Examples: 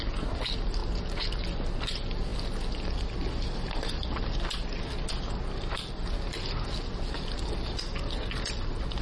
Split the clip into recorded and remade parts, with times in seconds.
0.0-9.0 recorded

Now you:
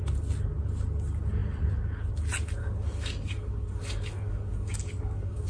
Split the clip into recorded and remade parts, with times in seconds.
0.0-2.6 recorded; 2.6-5.5 remade

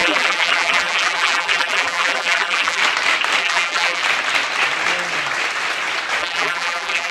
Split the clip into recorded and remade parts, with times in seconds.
0.0-2.8 remade; 2.8-3.4 recorded; 3.4-4.0 remade; 4.0-6.2 recorded; 6.2-7.1 remade